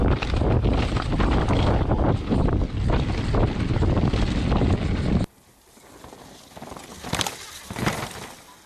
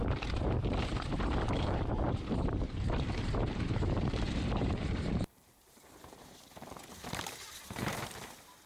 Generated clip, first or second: second